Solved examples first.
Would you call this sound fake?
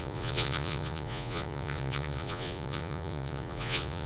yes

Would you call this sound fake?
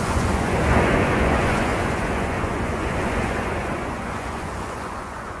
yes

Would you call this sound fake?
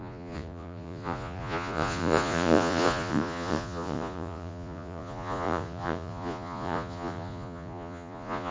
yes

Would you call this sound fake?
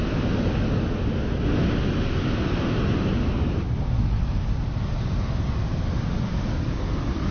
no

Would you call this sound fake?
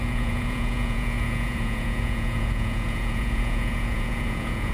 yes